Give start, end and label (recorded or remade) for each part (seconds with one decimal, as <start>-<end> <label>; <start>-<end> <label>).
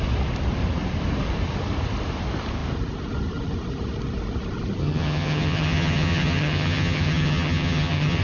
0.0-4.8 recorded; 4.8-8.2 remade